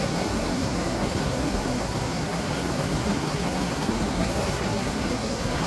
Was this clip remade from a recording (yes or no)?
yes